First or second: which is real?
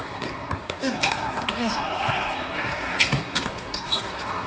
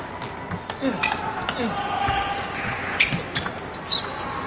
second